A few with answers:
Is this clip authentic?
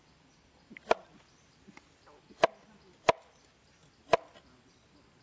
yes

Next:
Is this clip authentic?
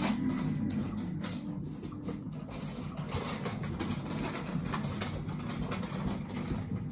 yes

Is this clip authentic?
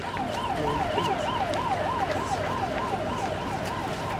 yes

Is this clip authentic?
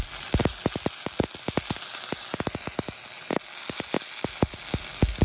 yes